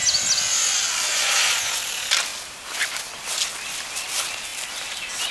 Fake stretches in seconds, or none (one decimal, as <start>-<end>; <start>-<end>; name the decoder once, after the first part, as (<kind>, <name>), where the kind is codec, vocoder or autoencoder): 1.1-1.7 (vocoder, Vocos)